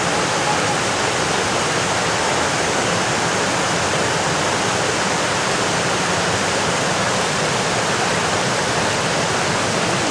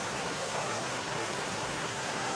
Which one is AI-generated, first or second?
second